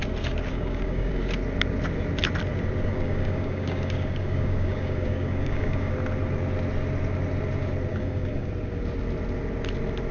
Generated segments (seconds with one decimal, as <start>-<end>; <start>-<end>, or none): 0.5-1.1; 2.9-5.9; 7.9-8.5